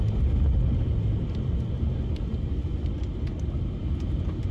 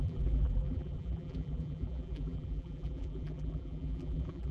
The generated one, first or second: second